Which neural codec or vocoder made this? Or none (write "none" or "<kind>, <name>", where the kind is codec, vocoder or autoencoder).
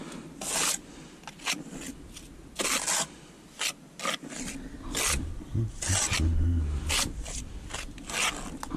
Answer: none